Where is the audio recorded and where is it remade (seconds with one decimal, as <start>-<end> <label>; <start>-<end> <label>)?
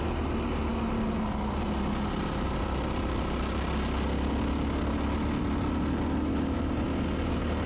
0.0-7.7 recorded